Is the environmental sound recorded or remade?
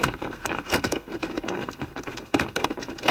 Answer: remade